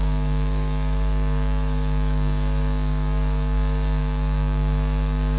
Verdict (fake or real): fake